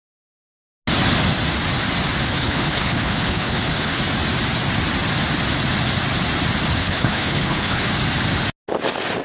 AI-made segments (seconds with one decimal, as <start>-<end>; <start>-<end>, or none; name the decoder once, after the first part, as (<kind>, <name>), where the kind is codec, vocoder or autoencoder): 2.2-4.0 (codec, HILCodec); 6.8-7.9

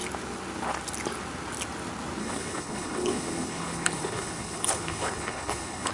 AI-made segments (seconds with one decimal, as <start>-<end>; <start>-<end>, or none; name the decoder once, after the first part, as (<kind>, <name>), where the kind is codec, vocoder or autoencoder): 2.2-5.9 (codec, HILCodec)